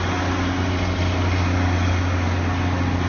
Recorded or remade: recorded